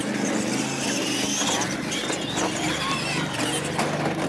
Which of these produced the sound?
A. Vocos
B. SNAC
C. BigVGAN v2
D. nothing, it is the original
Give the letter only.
D